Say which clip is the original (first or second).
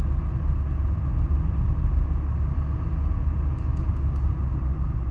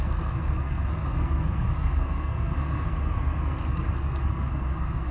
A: first